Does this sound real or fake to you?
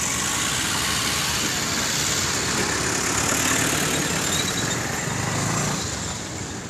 real